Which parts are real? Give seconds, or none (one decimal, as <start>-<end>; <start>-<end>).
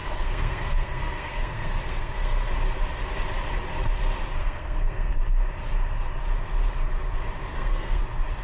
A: 2.5-4.4; 5.1-7.5; 8.0-8.4